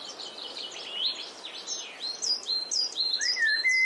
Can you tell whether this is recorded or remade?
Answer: recorded